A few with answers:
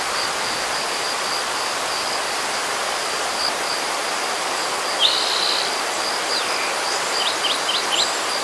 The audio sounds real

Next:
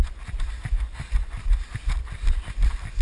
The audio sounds real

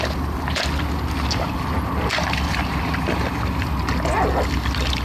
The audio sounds real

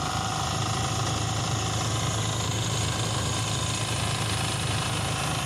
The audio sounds real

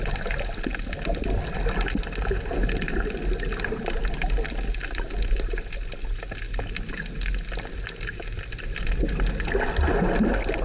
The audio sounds real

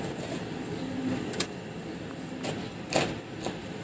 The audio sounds real